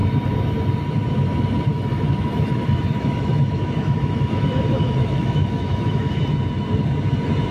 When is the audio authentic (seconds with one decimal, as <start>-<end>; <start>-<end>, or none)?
0.0-1.7; 6.2-7.5

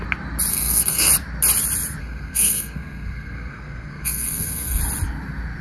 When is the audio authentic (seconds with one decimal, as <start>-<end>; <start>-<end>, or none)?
0.0-0.5; 1.1-2.0; 4.8-5.6

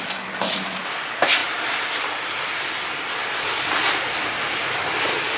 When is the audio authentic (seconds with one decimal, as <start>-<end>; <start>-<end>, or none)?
0.0-5.4

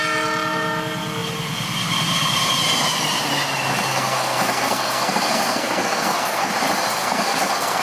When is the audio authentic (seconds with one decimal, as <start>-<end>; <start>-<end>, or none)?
0.0-3.9; 6.5-7.0

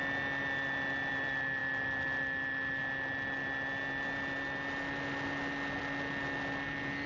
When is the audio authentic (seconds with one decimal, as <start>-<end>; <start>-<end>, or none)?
0.0-7.1

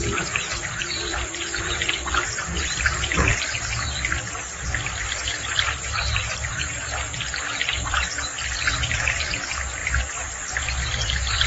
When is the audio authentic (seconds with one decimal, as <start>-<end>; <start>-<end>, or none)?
3.3-6.2; 8.3-8.8; 9.8-11.5

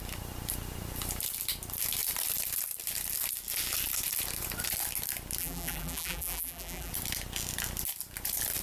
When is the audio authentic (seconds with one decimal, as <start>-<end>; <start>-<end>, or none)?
0.0-5.4; 6.9-8.6

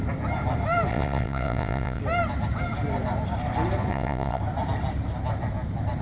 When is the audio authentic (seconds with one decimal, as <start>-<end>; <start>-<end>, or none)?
0.0-0.9; 2.0-3.9; 4.4-6.0